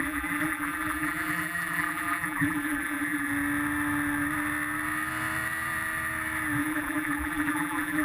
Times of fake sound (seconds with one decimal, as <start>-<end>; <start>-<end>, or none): 0.0-3.3; 6.6-8.0